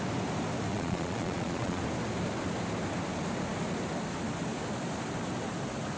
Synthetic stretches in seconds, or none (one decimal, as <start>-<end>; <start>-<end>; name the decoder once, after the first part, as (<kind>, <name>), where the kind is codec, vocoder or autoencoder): 0.7-1.8 (vocoder, Vocos)